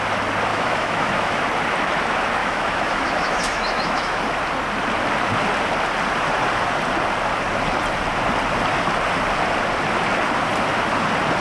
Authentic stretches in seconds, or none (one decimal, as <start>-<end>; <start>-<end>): 0.0-0.5; 1.4-2.4; 4.2-11.4